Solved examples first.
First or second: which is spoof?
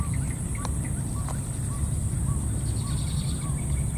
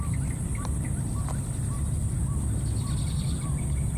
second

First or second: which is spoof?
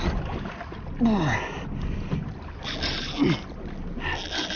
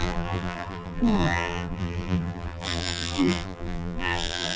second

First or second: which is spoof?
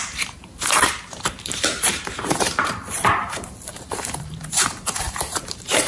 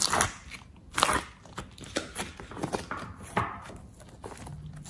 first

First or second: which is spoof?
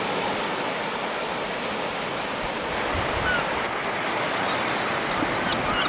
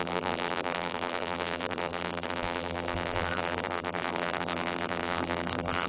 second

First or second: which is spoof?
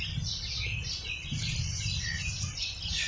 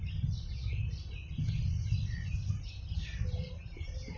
second